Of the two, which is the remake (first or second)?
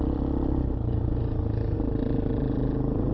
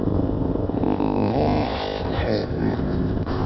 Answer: second